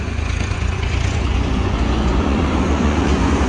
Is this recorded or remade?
remade